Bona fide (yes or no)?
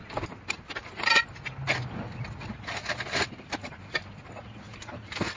yes